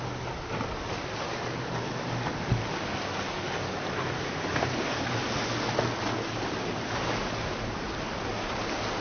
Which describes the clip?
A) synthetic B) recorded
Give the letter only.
B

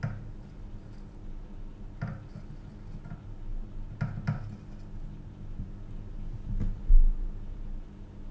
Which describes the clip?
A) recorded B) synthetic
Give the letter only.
A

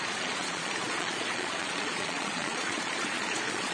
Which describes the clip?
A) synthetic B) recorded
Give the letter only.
A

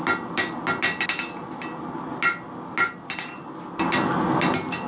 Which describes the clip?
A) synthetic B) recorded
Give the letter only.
B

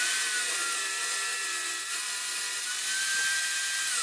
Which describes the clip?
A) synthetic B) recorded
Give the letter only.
B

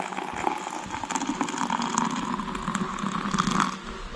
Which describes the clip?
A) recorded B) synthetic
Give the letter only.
A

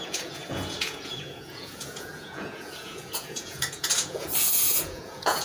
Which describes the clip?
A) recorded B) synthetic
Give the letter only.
B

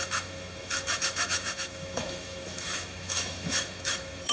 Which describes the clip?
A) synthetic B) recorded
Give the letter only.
A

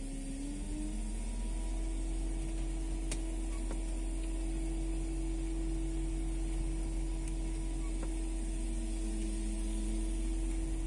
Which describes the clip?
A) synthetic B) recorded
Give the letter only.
B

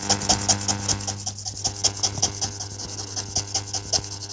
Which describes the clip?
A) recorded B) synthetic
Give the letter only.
A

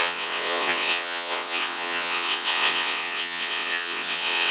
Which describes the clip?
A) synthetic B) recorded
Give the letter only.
A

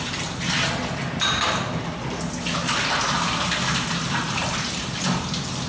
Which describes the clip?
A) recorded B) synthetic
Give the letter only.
A